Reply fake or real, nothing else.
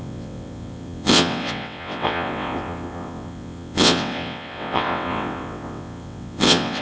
fake